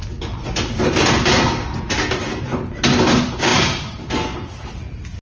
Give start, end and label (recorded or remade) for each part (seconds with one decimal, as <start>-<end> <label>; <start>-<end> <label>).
0.0-5.2 recorded